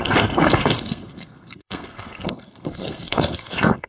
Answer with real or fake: fake